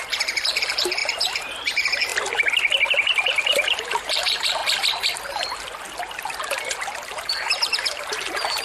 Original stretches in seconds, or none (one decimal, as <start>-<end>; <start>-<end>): 2.1-2.9; 4.6-6.4